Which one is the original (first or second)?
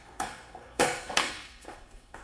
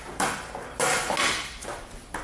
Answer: second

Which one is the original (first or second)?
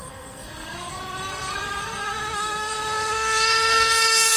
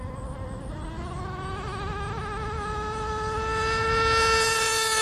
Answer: second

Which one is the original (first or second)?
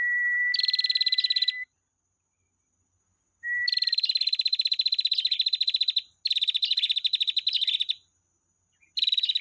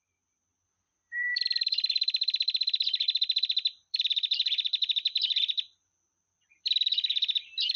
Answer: first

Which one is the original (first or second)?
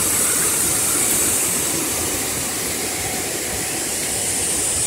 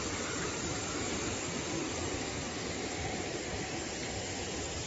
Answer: second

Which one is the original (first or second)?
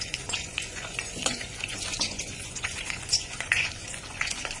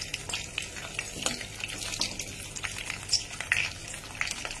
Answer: second